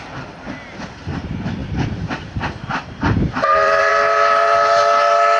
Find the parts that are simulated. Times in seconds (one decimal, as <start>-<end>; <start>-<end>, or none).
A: 0.0-3.9